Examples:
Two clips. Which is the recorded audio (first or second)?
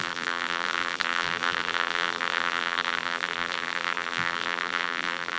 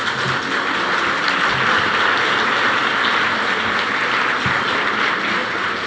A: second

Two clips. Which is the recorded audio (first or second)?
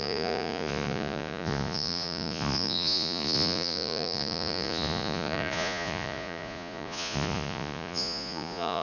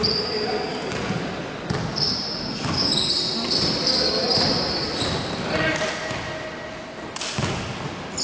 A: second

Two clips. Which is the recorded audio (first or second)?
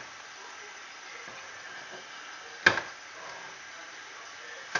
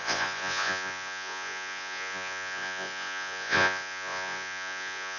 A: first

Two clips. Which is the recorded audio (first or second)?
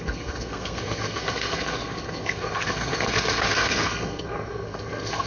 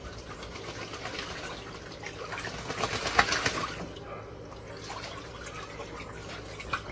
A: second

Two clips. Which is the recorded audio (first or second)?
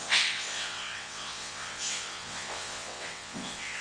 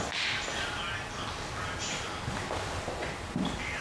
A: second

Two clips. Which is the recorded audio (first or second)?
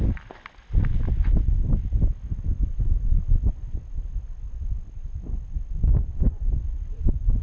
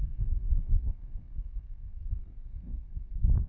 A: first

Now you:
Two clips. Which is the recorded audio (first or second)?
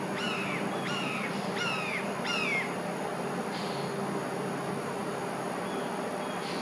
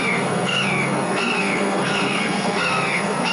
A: first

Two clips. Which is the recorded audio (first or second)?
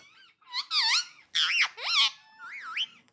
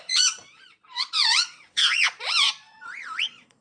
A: first